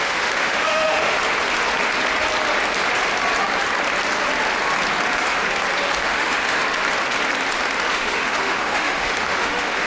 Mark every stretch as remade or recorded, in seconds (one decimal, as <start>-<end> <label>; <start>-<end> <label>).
0.0-1.2 remade; 1.2-5.9 recorded; 5.9-6.6 remade; 6.6-7.9 recorded; 7.9-9.9 remade